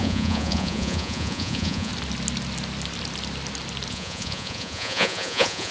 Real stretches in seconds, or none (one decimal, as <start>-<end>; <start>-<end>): 1.9-3.9